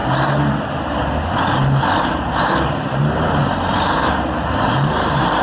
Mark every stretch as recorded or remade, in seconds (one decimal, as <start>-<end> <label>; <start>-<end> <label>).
0.0-2.1 recorded; 2.1-5.4 remade